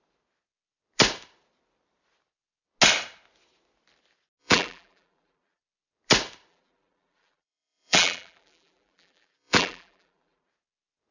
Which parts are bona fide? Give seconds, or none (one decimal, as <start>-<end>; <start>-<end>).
0.0-4.4; 5.6-6.5; 10.5-11.1